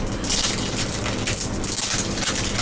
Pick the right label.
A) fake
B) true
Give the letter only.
B